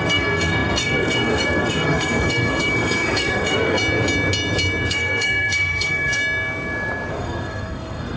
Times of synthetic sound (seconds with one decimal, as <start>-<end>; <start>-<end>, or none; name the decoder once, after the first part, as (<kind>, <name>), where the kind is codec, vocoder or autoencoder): 0.0-3.8 (codec, SNAC); 4.9-6.2; 7.1-8.2